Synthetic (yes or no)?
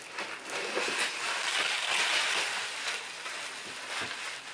no